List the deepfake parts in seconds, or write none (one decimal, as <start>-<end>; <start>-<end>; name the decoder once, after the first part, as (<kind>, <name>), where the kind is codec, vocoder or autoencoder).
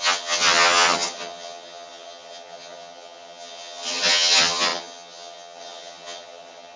0.0-6.8 (vocoder, HiFi-GAN)